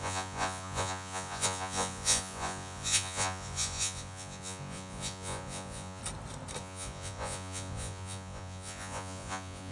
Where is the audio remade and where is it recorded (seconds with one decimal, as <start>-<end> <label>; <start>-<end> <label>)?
0.0-6.0 remade; 6.0-6.6 recorded; 6.6-9.7 remade